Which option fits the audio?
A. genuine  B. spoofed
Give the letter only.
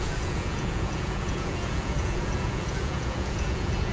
B